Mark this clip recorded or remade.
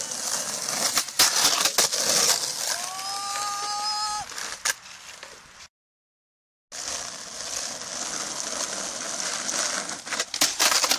recorded